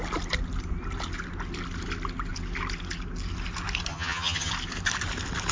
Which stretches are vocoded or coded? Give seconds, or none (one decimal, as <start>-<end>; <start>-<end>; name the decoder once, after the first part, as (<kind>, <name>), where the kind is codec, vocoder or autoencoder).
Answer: 3.9-4.5 (vocoder, HiFi-GAN)